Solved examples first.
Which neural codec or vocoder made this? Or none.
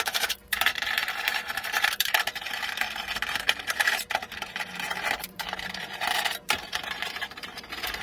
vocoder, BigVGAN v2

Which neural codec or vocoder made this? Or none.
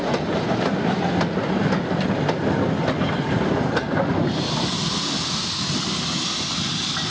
none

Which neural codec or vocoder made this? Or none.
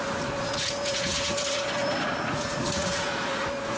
vocoder, Vocos